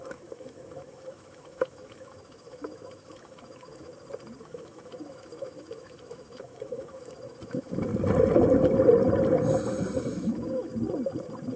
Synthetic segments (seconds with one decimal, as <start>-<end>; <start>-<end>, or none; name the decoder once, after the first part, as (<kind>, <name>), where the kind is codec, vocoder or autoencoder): 0.0-3.9 (autoencoder, DAC-VAE); 4.4-7.9; 10.0-10.7